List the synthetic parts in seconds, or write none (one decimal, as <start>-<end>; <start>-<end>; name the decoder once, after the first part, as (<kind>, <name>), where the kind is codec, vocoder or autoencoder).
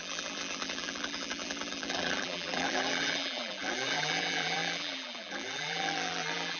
0.0-6.6 (vocoder, BigVGAN v2)